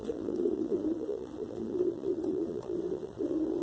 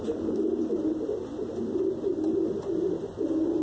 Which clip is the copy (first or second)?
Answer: first